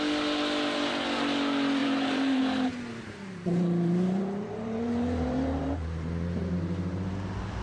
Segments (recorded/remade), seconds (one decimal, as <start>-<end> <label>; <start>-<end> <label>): 0.0-1.8 recorded; 1.8-2.4 remade; 2.4-2.9 recorded; 2.9-7.1 remade; 7.1-7.6 recorded